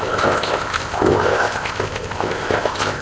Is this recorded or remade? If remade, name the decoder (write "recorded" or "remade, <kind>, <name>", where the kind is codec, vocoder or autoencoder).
remade, codec, ZipCodec